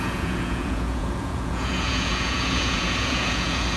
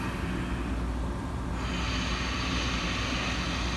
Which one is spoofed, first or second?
first